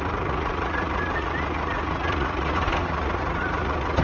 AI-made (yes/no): yes